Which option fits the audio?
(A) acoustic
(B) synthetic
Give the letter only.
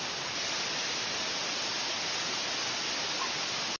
A